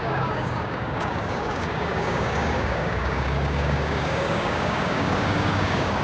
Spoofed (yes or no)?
yes